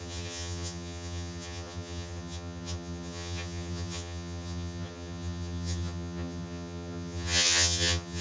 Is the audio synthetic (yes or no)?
yes